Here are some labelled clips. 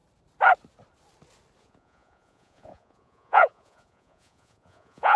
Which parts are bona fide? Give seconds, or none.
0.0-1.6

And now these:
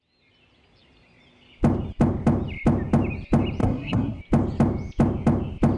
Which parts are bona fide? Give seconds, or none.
0.0-3.6; 4.2-5.8

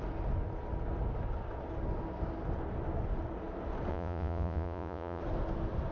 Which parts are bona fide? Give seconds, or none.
0.0-3.9; 5.2-5.9